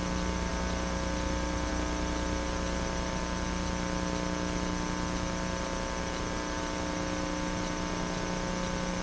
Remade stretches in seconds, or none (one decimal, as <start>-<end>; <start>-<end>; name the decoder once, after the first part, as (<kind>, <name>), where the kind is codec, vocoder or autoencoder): none